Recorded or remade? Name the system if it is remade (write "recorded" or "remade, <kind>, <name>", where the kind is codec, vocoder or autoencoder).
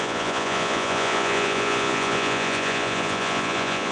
remade, vocoder, Vocos